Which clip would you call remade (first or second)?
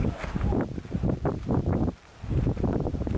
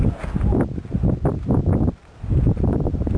first